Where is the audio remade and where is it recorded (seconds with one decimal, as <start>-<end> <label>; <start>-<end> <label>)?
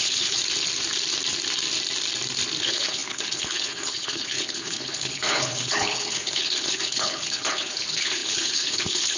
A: 0.0-0.4 remade; 0.4-2.6 recorded; 2.6-9.2 remade